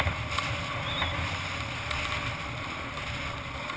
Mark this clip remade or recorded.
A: recorded